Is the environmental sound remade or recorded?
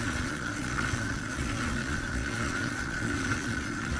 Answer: remade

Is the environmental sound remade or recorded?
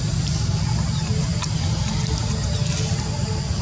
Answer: recorded